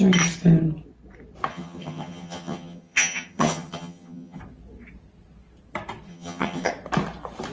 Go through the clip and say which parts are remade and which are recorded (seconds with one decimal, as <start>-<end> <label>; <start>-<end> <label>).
0.0-1.5 recorded; 1.5-4.4 remade; 4.4-6.1 recorded; 6.1-6.7 remade; 6.7-7.5 recorded

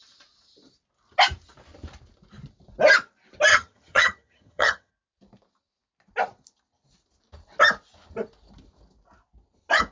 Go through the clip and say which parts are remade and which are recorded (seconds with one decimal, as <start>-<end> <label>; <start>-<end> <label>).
0.0-3.5 recorded; 3.5-4.9 remade; 4.9-9.9 recorded

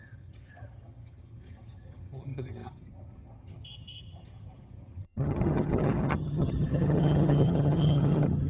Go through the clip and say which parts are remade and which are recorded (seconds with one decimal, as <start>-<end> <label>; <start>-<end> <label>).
0.0-8.5 remade

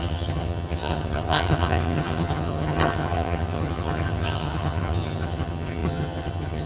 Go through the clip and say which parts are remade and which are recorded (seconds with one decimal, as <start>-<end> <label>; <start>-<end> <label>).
0.0-6.7 remade

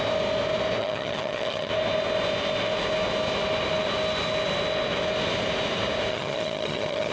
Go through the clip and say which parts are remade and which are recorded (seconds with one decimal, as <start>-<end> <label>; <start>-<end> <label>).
0.0-0.8 recorded; 0.8-1.7 remade; 1.7-6.1 recorded; 6.1-7.1 remade